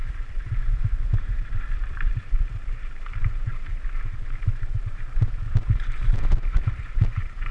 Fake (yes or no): yes